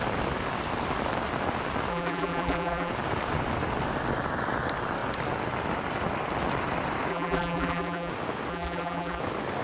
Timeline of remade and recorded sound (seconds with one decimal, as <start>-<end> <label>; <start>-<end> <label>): 0.0-1.9 recorded; 1.9-2.9 remade; 2.9-7.1 recorded; 7.1-8.1 remade; 8.1-8.5 recorded; 8.5-9.2 remade; 9.2-9.6 recorded